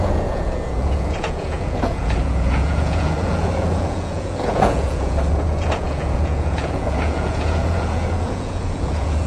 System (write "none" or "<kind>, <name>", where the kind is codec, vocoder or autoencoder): vocoder, Vocos